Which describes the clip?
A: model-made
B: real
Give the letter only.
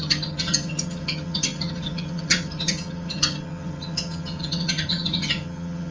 A